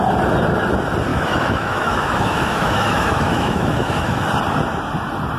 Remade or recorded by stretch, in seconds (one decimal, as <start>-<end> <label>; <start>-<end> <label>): 0.0-1.1 recorded; 1.1-4.3 remade; 4.3-5.4 recorded